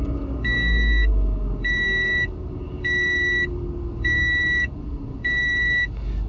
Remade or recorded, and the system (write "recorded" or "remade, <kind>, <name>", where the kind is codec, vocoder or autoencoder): remade, codec, DAC